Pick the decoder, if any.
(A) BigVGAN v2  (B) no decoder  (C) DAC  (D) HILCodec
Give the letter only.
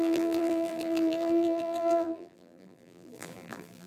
A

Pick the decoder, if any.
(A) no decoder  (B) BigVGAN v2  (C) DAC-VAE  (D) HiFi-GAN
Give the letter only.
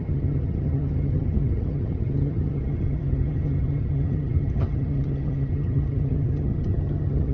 D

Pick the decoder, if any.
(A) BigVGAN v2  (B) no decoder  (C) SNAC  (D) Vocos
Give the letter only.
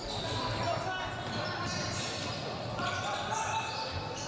B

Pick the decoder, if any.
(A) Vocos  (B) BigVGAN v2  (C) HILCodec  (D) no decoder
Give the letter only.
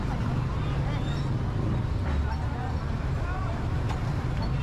D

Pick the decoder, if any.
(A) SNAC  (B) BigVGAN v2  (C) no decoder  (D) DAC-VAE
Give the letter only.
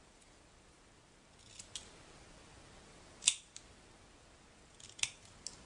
C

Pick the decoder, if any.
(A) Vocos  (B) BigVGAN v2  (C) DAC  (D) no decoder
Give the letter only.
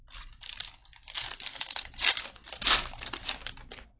D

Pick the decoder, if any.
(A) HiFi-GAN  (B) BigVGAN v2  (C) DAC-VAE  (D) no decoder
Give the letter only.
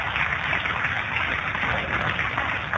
D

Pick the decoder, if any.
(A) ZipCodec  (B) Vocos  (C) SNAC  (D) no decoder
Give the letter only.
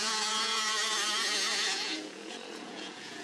B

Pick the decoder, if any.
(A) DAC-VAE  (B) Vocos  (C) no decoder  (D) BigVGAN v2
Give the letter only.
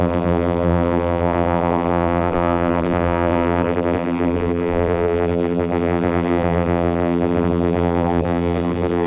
D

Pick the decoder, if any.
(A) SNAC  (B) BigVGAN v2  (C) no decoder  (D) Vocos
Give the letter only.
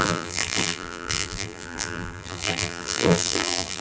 B